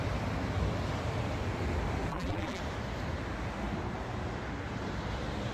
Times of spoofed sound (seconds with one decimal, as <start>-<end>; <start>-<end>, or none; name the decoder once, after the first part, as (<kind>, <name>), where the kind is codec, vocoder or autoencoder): 2.1-2.6 (vocoder, BigVGAN v2)